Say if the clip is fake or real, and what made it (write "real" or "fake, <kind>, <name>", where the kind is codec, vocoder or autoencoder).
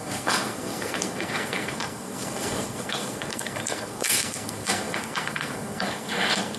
fake, codec, SNAC